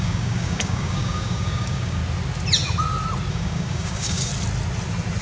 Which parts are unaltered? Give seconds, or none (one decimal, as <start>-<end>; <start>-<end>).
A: 2.0-3.3; 4.3-5.2